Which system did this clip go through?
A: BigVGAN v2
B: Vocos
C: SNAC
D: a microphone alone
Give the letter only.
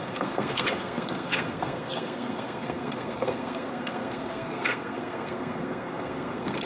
C